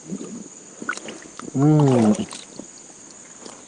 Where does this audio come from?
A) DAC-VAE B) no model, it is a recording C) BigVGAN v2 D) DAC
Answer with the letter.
B